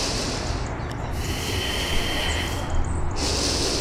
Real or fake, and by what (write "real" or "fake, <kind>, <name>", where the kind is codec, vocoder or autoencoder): real